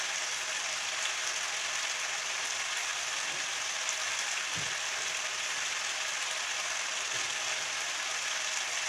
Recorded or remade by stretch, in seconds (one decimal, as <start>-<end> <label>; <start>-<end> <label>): 0.0-8.9 recorded